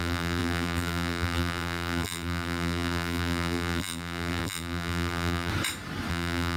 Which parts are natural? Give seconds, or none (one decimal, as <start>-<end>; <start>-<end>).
5.5-6.1